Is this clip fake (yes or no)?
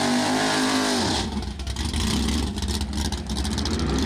no